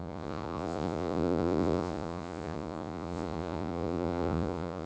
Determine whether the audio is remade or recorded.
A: remade